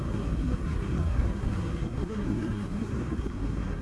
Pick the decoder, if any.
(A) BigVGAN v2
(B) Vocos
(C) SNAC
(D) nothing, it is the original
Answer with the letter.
C